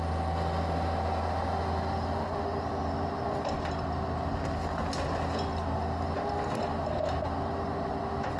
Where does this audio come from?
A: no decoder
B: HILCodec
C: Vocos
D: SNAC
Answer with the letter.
A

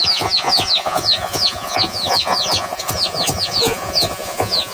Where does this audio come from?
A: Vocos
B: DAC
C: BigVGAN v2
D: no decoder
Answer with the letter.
A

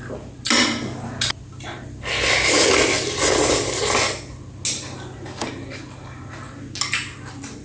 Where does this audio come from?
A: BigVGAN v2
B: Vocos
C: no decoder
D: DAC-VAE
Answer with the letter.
C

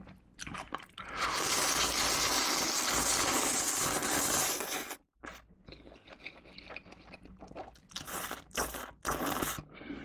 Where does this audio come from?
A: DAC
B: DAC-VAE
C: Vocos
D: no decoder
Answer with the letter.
D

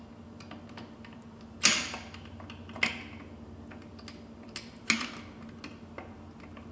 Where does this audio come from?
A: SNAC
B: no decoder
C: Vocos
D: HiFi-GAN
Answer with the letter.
B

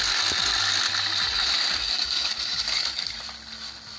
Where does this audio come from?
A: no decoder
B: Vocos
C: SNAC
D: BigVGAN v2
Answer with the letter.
A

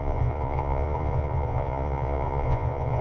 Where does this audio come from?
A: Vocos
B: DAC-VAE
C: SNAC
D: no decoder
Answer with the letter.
A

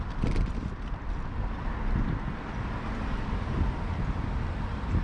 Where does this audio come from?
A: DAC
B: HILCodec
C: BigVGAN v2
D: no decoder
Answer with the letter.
C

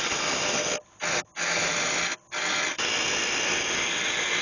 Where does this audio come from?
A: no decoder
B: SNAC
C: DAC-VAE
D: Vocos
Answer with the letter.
A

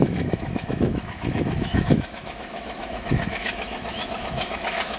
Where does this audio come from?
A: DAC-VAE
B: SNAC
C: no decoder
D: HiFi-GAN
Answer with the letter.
A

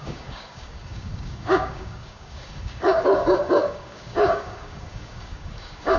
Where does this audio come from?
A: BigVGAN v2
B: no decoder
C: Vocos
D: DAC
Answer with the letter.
D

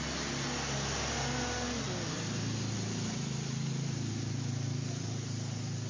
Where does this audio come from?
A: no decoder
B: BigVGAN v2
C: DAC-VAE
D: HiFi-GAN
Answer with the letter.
A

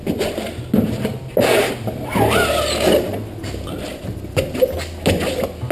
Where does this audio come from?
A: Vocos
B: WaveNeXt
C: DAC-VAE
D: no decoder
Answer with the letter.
D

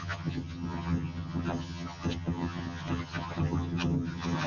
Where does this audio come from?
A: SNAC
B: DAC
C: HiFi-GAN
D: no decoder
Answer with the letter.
C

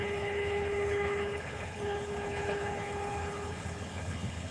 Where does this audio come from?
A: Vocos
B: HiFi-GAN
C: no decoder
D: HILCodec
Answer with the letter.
D